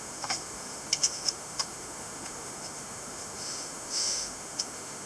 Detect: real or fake fake